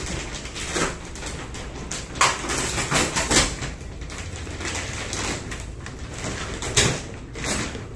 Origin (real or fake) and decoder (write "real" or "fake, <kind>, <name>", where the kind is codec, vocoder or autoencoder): real